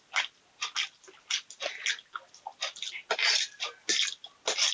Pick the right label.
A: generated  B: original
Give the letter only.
B